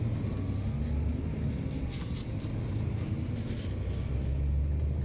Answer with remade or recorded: recorded